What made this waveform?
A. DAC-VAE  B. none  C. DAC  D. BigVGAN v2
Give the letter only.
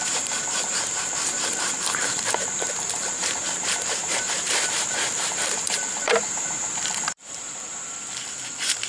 D